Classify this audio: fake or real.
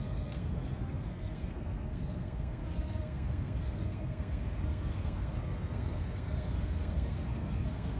fake